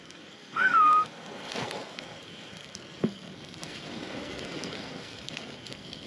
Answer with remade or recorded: remade